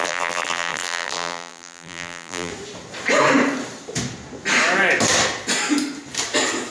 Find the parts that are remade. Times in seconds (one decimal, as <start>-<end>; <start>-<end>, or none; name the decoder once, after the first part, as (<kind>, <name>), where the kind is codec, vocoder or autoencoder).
0.0-2.5 (vocoder, BigVGAN v2)